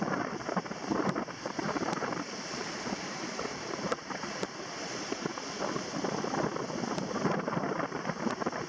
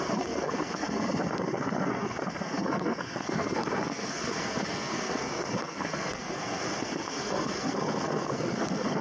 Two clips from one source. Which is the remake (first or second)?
second